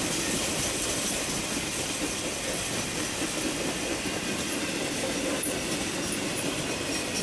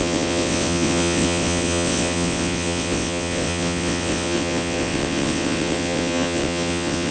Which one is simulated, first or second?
second